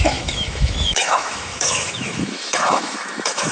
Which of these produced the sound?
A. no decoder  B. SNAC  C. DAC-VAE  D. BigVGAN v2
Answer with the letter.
C